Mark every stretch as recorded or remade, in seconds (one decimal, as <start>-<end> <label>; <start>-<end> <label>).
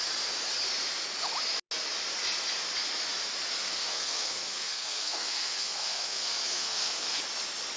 0.0-3.6 recorded; 3.6-7.2 remade; 7.2-7.8 recorded